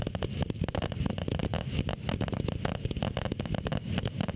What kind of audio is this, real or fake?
real